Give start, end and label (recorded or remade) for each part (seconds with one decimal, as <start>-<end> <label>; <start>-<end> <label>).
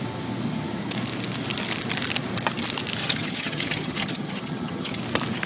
0.0-3.0 recorded; 3.0-5.0 remade; 5.0-5.5 recorded